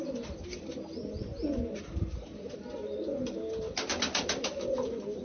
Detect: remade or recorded recorded